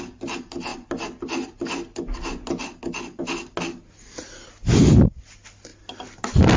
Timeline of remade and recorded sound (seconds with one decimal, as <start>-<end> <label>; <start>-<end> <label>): 0.0-6.6 recorded